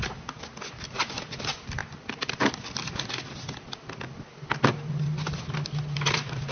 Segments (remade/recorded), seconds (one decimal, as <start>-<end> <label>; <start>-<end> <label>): 0.0-6.5 recorded